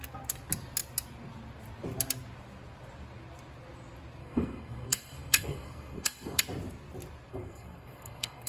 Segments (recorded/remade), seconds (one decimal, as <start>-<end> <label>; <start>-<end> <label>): 0.0-4.2 recorded; 4.2-6.4 remade; 6.4-7.3 recorded; 7.3-8.5 remade